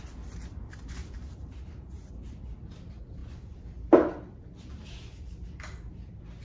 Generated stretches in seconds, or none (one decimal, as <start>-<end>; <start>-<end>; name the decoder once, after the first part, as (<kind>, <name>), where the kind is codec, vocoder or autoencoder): 1.0-2.1 (vocoder, BigVGAN v2)